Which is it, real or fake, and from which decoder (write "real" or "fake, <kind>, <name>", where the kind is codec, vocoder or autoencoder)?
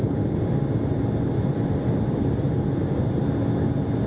real